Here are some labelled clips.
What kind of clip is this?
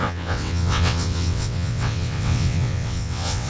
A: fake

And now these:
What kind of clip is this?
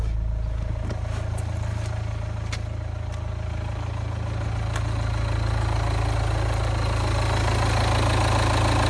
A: real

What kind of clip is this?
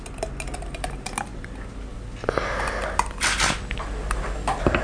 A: real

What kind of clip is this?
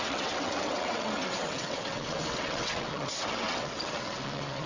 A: fake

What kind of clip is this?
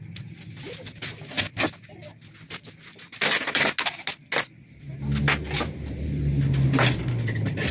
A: real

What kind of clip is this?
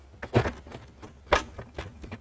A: real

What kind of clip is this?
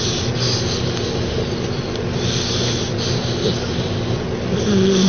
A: real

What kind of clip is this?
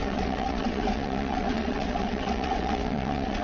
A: fake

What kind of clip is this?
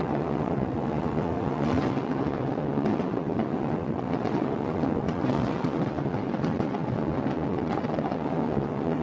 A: fake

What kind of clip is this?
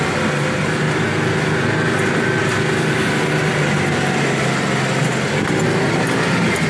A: real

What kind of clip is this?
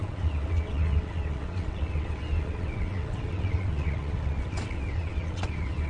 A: fake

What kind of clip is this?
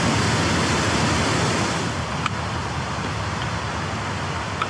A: real